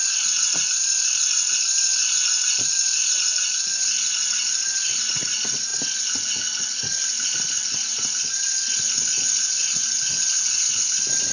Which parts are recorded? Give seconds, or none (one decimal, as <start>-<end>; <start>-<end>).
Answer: 0.0-11.3

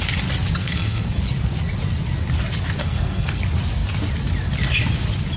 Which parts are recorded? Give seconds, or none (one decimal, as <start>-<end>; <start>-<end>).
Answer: 0.0-0.6; 1.2-2.8; 3.4-5.4

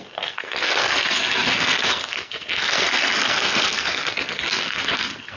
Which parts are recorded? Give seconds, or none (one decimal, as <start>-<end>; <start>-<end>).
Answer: none

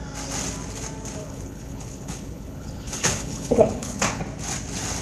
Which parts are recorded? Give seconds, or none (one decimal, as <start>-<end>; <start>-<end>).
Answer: 0.0-1.2; 4.2-5.0

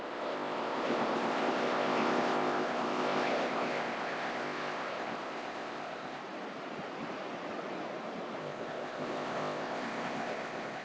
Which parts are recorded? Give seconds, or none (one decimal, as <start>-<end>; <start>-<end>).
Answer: 6.2-8.4

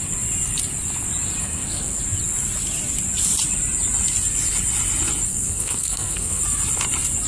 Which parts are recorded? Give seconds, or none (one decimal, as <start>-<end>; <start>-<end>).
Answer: 0.0-1.4; 2.0-5.3; 6.4-7.3